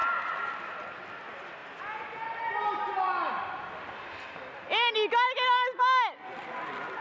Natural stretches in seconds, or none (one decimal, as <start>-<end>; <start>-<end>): 0.0-7.0